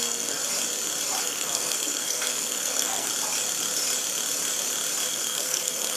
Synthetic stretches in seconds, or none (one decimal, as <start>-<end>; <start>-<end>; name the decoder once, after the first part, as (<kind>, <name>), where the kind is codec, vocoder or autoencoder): 0.0-0.4 (codec, SNAC); 1.2-3.1; 5.1-6.0